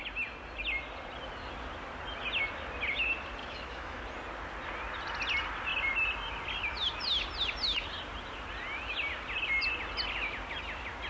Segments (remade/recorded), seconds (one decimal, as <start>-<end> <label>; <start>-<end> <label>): 0.0-3.4 recorded; 3.4-4.0 remade; 4.0-11.1 recorded